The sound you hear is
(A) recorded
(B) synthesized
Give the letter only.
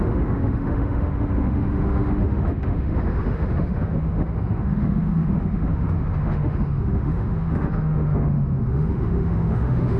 B